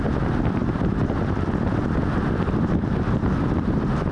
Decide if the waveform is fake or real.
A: real